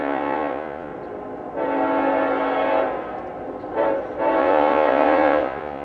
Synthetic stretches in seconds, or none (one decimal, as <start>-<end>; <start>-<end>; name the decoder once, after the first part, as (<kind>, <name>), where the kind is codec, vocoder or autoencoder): 0.0-0.9 (vocoder, Vocos); 4.4-5.8